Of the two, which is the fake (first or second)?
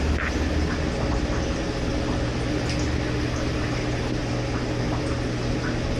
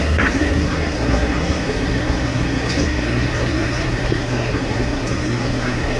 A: second